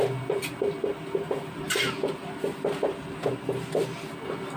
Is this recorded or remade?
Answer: recorded